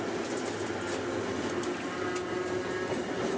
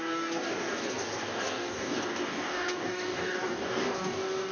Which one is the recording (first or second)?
first